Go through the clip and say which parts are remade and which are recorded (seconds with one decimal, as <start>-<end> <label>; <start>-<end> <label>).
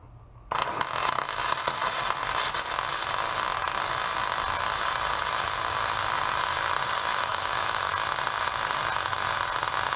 0.0-7.1 recorded; 7.1-7.9 remade; 7.9-10.0 recorded